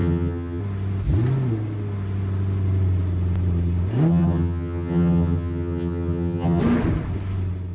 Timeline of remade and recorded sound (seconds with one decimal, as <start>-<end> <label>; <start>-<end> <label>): 0.0-0.6 remade; 0.6-4.1 recorded; 4.1-6.6 remade; 6.6-7.7 recorded